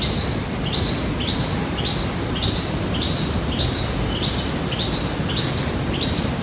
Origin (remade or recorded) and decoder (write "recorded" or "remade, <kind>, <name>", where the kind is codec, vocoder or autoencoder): recorded